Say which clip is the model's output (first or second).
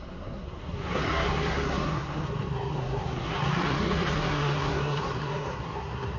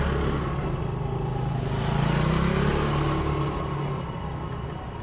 first